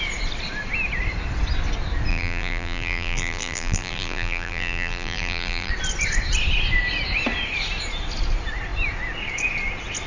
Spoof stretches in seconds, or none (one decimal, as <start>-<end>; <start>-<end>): 2.1-5.7